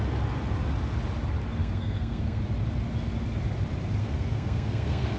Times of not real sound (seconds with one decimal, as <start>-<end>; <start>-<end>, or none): 1.6-2.4; 4.0-5.2